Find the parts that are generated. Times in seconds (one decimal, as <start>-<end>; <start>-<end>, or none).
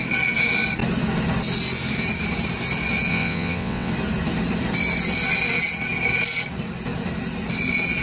3.1-3.9